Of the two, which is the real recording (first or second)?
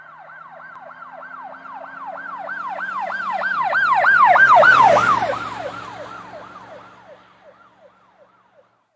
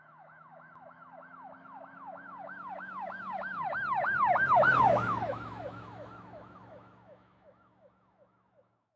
first